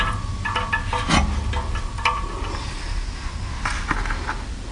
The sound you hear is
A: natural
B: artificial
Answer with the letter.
A